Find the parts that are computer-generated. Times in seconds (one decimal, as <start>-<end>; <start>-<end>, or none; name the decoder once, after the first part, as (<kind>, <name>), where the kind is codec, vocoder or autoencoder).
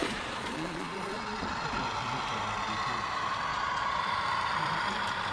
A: 0.0-1.8 (vocoder, Vocos); 3.5-4.0